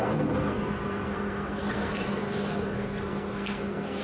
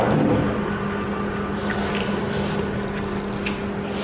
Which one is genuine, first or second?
second